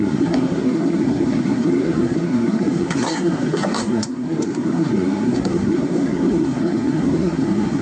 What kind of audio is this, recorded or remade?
remade